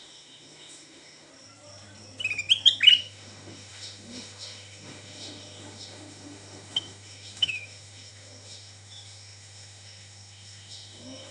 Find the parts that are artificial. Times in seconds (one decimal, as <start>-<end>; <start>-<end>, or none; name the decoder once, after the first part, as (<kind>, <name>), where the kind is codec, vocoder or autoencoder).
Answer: 0.0-1.3 (autoencoder, DAC-VAE); 3.0-11.3